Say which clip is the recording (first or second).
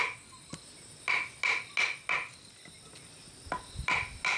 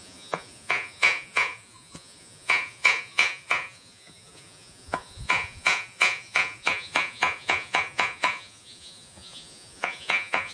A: first